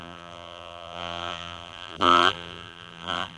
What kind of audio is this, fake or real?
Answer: fake